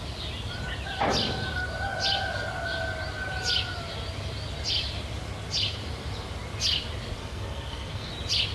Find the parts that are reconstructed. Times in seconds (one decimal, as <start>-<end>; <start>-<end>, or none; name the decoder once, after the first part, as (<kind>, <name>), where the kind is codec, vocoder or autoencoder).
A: 7.2-8.1 (codec, SNAC)